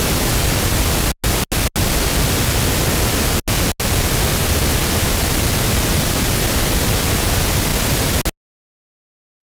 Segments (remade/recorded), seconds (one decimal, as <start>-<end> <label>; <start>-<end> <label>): 0.0-9.4 recorded